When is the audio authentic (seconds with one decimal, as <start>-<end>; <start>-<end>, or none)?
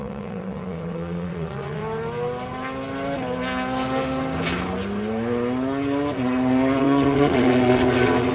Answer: 1.8-6.8